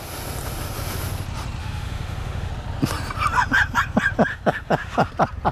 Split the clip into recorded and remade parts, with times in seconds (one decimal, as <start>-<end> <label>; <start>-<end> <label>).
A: 0.0-1.6 recorded; 1.6-2.5 remade; 2.5-4.3 recorded; 4.3-5.1 remade; 5.1-5.5 recorded